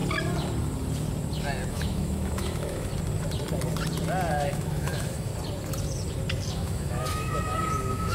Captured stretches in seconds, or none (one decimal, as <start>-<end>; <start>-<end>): 0.0-1.7; 2.9-4.3; 5.3-6.5